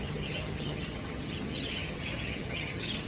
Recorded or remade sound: remade